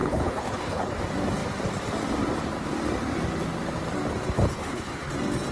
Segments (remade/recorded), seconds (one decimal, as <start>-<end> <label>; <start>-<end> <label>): 0.0-1.0 remade; 1.0-4.5 recorded; 4.5-5.1 remade; 5.1-5.5 recorded